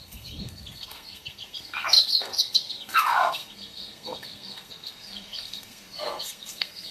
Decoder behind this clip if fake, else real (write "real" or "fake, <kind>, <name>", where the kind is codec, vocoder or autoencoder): fake, codec, SNAC